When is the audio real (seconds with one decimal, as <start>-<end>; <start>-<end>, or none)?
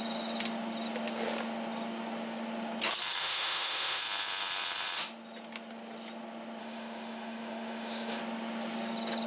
0.0-3.2; 4.0-6.6; 8.2-9.3